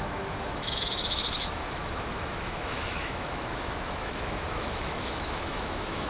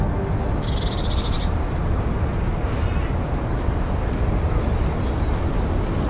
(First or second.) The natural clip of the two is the second